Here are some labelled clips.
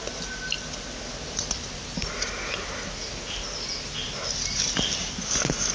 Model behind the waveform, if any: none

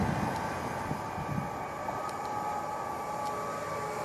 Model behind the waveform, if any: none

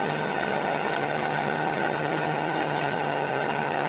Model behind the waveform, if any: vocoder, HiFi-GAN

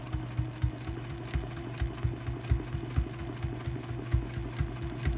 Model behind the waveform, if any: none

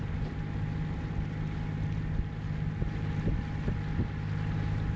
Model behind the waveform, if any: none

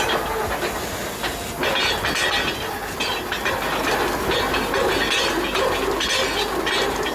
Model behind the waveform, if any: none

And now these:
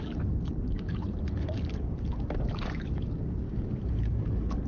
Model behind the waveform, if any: codec, DAC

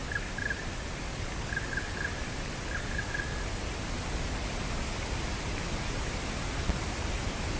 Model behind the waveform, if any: none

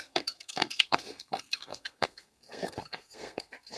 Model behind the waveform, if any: codec, SNAC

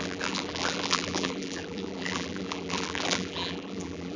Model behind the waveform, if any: vocoder, BigVGAN v2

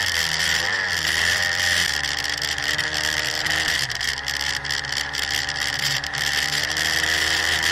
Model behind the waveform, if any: vocoder, BigVGAN v2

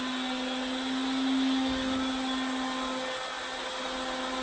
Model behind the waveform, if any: none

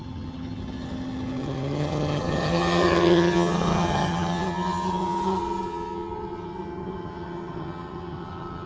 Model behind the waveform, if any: vocoder, HiFi-GAN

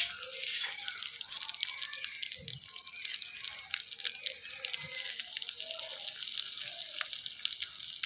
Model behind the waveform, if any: none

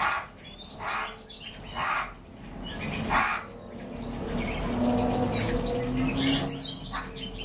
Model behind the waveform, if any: none